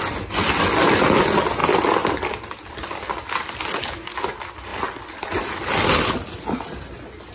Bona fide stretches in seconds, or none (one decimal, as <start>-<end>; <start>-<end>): 0.0-7.3

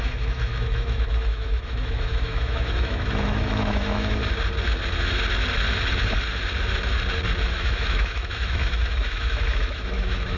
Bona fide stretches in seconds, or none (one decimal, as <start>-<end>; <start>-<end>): 4.2-7.5

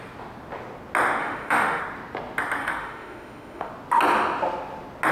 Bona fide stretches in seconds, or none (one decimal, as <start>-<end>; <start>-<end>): 0.0-1.2; 1.8-2.6; 3.7-5.1

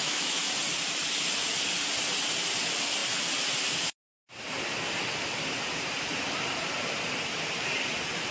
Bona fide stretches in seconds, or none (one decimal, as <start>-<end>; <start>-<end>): 0.5-8.3

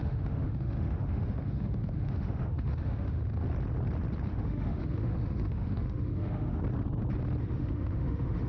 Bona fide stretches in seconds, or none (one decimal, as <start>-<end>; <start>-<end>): 3.2-4.3; 6.6-7.4

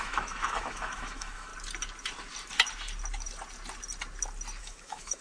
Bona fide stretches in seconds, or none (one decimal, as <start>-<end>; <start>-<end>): 1.5-4.6

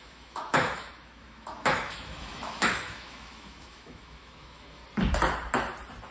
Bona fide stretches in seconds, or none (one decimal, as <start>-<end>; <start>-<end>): 4.8-6.1